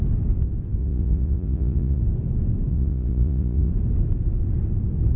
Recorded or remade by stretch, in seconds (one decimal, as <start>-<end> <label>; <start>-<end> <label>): 0.0-0.8 recorded; 0.8-2.0 remade; 2.0-2.7 recorded; 2.7-3.7 remade; 3.7-5.2 recorded